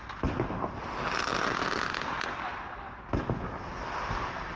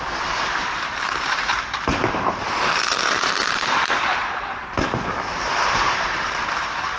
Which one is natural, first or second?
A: first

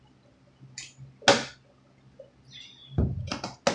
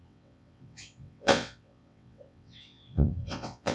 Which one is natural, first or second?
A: first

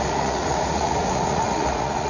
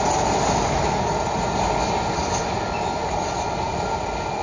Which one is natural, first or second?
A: second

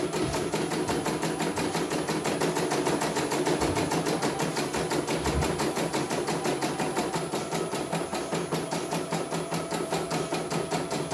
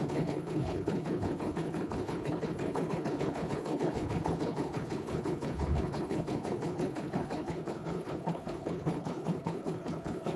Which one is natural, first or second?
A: first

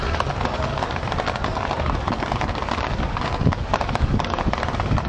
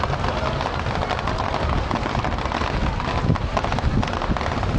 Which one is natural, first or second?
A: second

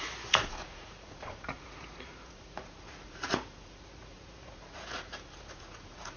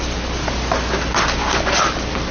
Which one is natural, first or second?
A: second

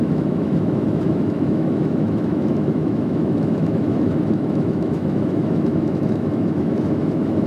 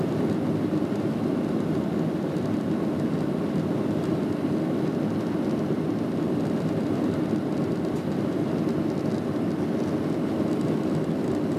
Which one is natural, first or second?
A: second